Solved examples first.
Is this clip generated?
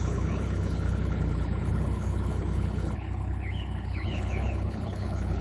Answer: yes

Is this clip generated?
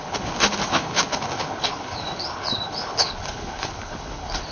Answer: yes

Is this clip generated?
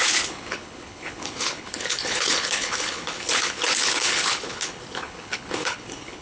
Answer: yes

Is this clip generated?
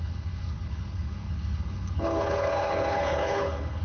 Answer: yes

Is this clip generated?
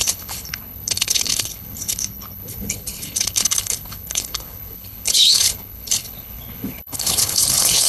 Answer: yes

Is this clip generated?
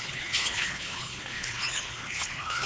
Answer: yes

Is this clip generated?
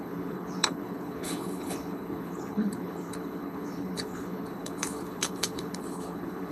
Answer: yes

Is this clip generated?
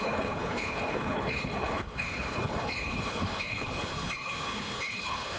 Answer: yes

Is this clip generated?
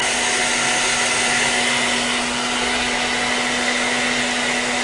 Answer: no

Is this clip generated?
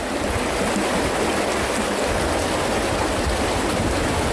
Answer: no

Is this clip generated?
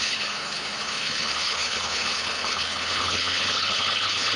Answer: yes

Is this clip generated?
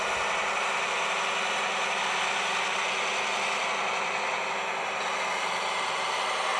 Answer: no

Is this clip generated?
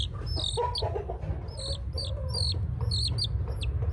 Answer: no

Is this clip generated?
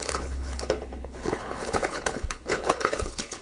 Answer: yes